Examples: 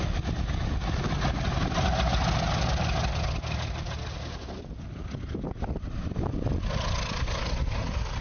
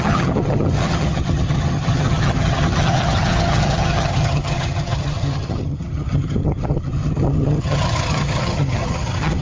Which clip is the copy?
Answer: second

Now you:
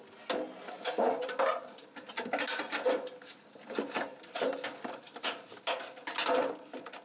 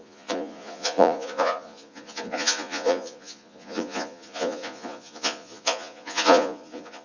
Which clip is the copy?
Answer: second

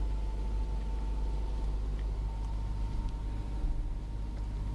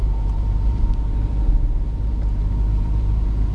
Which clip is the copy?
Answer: second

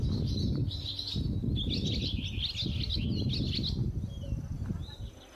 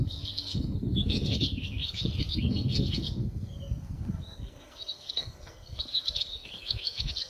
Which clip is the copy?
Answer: second